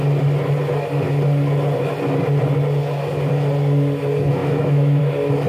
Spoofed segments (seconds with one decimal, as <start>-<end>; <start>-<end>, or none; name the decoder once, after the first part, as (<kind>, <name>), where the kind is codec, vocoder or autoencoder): 4.4-5.0 (autoencoder, DAC-VAE)